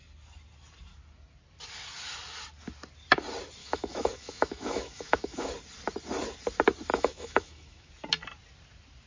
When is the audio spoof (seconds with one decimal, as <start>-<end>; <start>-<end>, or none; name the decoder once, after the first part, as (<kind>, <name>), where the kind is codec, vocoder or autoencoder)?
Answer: 3.6-5.5 (autoencoder, DAC-VAE); 6.9-7.9